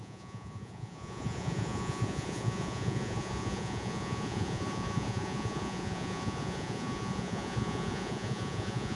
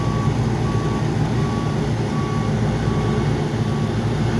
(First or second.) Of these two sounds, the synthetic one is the first